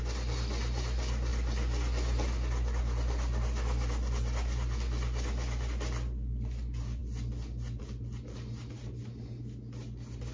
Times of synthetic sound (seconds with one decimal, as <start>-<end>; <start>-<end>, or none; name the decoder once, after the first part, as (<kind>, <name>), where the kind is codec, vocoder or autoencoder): none